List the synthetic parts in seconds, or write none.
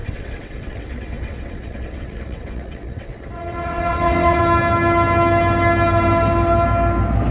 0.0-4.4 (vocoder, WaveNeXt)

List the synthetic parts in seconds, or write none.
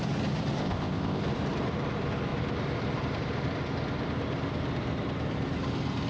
0.6-1.2 (codec, ZipCodec)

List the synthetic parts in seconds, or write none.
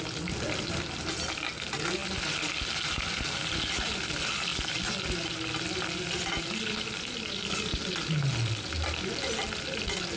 none